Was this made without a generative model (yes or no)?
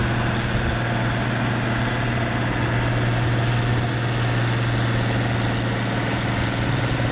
yes